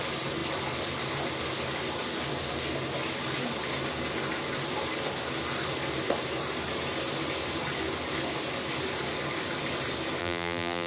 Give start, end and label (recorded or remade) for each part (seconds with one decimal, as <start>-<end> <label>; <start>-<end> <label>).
0.0-10.2 recorded; 10.2-10.9 remade